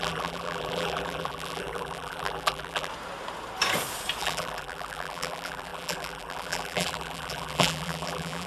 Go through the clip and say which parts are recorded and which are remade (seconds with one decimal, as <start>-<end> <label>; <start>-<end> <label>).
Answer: 0.0-2.9 remade; 2.9-4.2 recorded; 4.2-8.5 remade